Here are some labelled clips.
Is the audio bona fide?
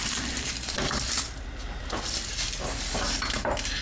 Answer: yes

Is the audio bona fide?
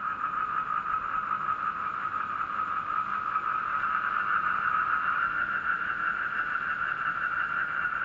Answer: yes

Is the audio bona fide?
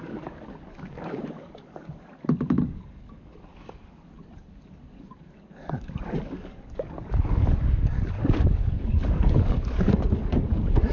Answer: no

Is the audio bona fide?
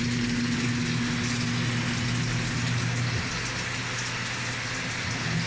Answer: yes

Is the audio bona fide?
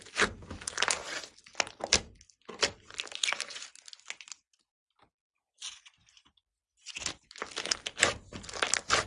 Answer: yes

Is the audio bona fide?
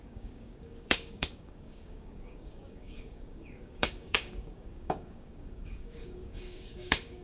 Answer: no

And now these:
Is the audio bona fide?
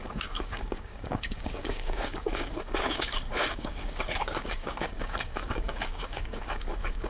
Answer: no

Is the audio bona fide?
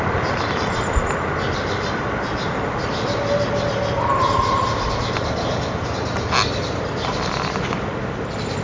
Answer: yes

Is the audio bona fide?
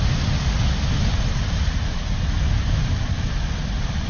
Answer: yes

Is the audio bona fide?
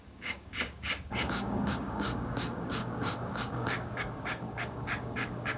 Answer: no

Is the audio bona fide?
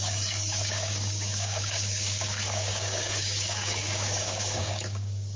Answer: no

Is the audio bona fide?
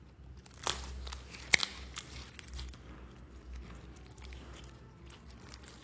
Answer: yes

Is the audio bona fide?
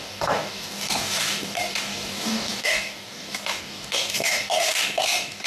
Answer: no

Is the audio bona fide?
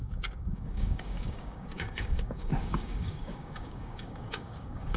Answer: no